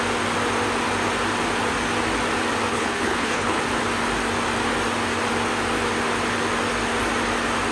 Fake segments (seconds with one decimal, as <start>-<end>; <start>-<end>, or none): 2.7-3.6